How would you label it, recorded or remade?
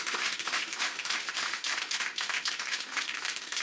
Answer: remade